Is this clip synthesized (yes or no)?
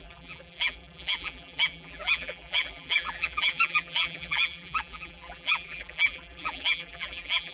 yes